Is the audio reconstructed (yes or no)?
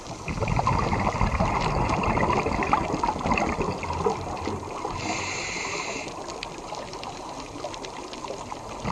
no